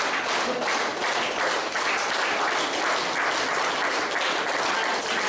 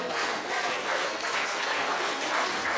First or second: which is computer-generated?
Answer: second